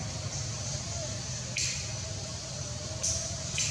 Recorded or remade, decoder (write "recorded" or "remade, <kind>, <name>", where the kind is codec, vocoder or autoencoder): recorded